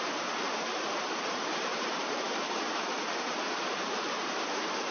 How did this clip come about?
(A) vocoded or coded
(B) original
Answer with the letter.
A